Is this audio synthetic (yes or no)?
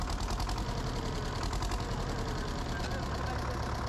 no